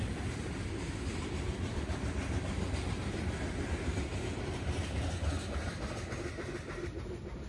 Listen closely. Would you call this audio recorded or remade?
recorded